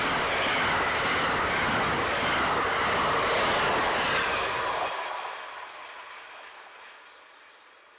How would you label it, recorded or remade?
recorded